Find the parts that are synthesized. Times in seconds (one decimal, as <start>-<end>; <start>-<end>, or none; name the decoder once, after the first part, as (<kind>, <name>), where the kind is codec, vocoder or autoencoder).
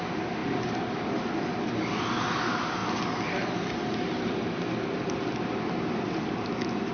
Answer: none